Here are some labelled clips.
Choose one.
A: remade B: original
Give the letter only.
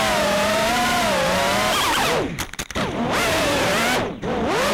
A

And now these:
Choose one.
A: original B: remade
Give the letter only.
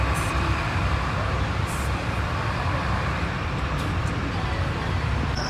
B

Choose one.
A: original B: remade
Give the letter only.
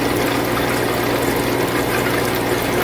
A